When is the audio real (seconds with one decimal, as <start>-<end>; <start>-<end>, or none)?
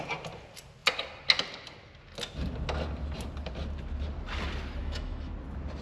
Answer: 0.0-4.8; 5.3-5.8